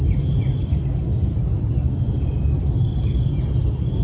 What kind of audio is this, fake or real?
real